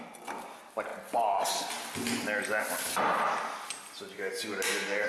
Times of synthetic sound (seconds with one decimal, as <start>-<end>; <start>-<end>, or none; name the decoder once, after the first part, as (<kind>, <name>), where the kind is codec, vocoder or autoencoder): none